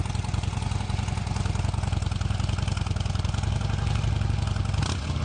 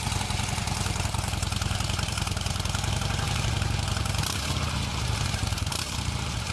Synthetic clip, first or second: second